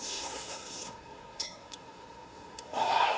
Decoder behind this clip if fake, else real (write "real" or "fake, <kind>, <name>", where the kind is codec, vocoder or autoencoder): fake, codec, SNAC